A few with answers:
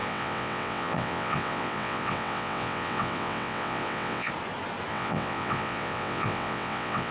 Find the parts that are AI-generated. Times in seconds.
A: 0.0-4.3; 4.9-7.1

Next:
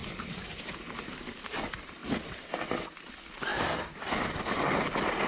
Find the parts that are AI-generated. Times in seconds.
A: 0.0-1.6

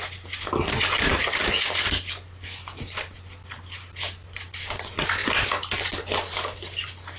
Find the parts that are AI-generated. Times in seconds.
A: none

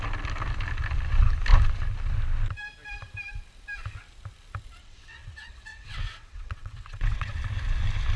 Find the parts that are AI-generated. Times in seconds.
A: 4.8-7.3

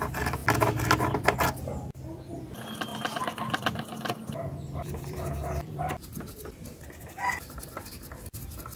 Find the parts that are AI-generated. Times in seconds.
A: 2.9-7.6

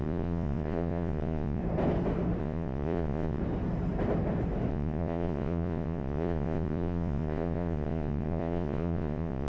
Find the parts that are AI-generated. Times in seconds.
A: 0.0-1.6; 2.4-3.4; 4.7-9.5

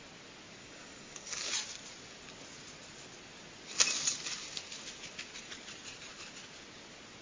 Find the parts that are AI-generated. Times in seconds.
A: 0.6-1.5